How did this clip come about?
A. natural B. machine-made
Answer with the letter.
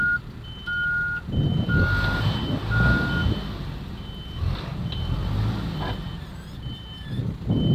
A